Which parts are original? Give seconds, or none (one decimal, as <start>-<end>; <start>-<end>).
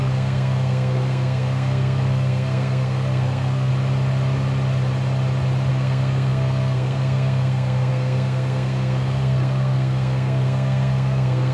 3.7-5.7